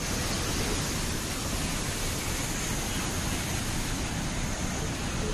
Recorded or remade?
recorded